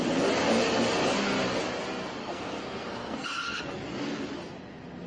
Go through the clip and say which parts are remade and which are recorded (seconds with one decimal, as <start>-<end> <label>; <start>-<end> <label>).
0.0-2.2 recorded; 2.2-3.6 remade; 3.6-5.1 recorded